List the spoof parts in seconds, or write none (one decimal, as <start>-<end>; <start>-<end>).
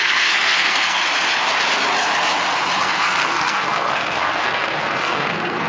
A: 0.0-1.0; 2.8-5.7